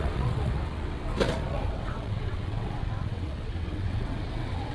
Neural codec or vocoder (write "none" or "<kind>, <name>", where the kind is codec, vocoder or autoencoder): vocoder, WaveNeXt